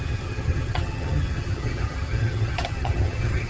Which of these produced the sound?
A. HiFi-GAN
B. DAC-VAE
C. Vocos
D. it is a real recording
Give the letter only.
A